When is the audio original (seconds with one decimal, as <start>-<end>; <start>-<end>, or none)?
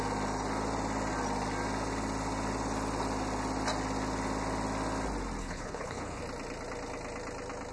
0.0-5.4; 6.2-7.7